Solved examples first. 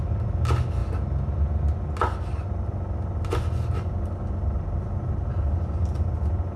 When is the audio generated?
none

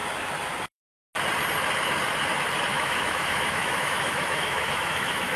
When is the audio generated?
2.7-5.4 (autoencoder, DAC-VAE)

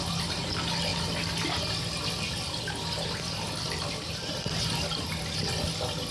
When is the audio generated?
none

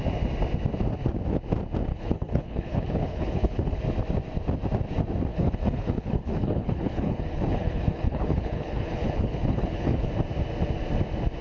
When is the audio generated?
1.9-3.8 (codec, HILCodec); 5.3-10.1

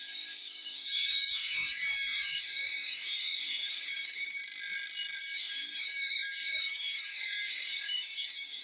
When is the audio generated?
0.0-4.4 (codec, DAC); 5.2-8.6

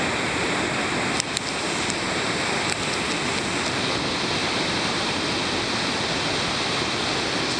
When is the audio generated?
4.4-5.3 (vocoder, BigVGAN v2)